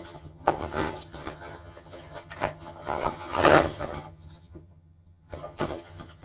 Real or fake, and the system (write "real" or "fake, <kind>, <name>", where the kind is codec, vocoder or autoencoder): fake, vocoder, HiFi-GAN